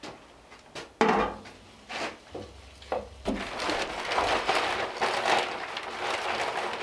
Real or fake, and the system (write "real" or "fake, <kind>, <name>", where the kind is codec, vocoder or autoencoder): real